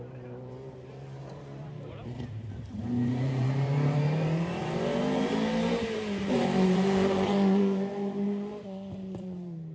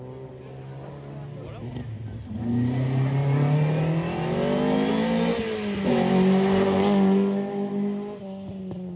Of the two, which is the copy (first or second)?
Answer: first